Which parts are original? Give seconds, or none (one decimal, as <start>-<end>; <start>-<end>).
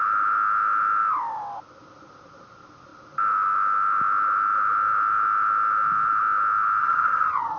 0.0-6.8